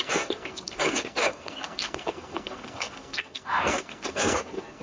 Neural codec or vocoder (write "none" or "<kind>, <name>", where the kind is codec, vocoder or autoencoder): codec, SNAC